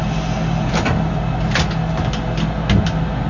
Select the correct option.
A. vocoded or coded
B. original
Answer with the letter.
B